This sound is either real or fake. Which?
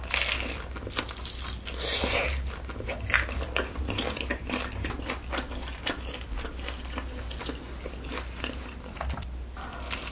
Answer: real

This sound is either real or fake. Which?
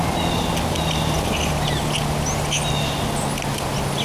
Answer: real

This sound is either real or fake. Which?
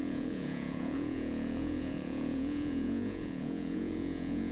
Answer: fake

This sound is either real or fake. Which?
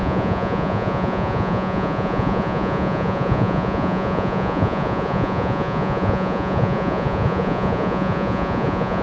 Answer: fake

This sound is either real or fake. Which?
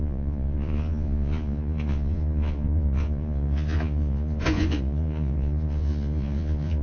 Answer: fake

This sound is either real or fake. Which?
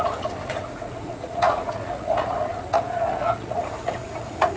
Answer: fake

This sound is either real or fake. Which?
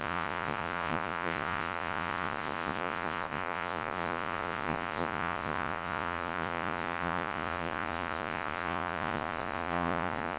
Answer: fake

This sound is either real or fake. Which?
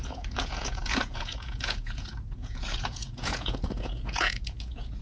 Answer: fake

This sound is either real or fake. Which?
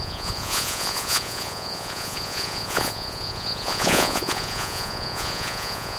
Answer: fake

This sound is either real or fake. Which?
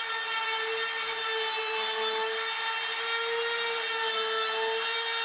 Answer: real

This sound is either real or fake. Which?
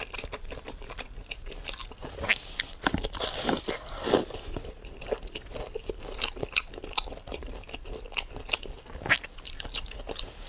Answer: real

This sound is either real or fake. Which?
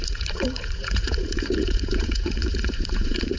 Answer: fake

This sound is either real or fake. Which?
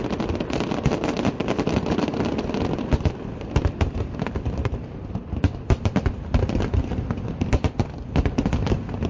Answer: real